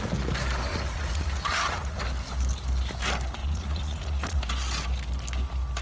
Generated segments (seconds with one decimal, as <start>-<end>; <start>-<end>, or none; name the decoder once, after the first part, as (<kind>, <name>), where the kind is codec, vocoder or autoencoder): 0.7-2.0 (vocoder, Vocos); 3.4-4.4